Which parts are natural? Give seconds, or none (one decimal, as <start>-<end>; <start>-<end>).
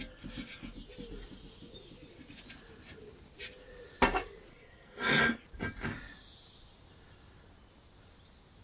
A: 0.0-4.5; 5.4-8.6